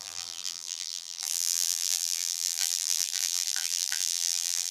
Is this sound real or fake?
fake